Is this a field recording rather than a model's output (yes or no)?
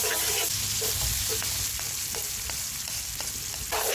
yes